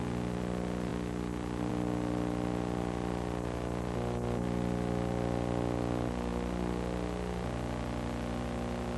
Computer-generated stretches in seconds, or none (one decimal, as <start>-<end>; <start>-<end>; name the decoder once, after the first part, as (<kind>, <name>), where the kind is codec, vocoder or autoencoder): none

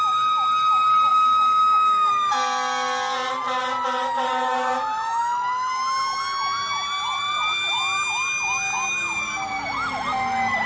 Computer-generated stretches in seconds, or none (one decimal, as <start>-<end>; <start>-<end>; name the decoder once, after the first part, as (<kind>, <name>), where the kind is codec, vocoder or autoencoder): 1.1-2.1 (autoencoder, DAC-VAE)

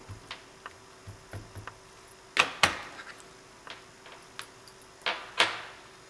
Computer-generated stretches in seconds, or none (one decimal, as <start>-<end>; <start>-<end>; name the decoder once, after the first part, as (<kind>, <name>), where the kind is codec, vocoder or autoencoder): none

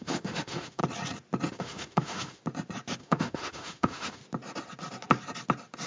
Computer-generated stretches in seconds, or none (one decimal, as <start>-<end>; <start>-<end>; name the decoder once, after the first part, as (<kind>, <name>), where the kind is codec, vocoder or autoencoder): 0.0-0.8 (autoencoder, DAC-VAE); 1.5-2.4; 3.0-4.2